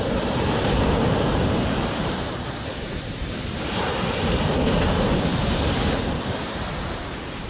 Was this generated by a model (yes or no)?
yes